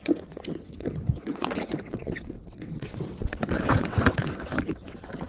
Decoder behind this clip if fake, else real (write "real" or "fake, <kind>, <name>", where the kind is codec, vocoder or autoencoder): fake, vocoder, WaveNeXt